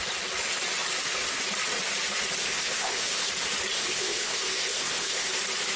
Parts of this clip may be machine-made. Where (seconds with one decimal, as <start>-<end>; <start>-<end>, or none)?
2.4-3.3; 3.7-5.3